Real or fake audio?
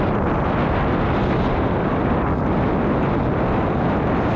real